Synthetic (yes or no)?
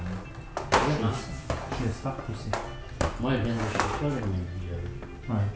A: no